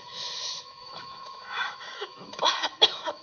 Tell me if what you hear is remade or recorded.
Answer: remade